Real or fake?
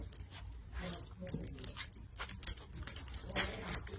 real